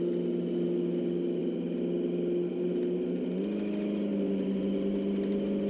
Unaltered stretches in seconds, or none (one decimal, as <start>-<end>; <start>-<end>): 0.0-5.7